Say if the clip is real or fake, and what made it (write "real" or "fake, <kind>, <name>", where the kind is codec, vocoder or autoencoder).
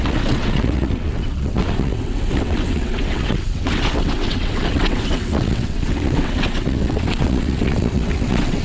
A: fake, vocoder, WaveNeXt